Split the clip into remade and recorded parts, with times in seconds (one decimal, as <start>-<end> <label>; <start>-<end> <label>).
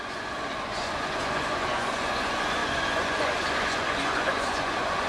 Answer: 0.0-5.1 remade